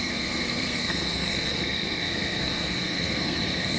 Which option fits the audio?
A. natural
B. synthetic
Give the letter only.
B